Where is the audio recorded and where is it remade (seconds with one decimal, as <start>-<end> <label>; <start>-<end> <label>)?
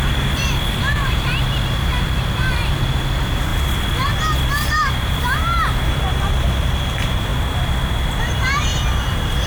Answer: 0.0-3.5 remade; 3.5-4.5 recorded; 4.5-7.3 remade; 7.3-8.2 recorded; 8.2-9.5 remade